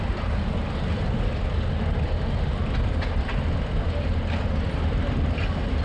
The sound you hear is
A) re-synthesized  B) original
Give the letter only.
B